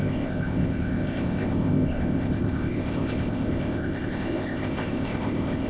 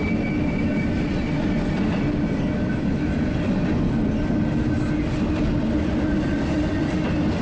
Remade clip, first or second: first